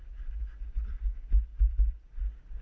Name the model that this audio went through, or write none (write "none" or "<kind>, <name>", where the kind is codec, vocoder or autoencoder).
none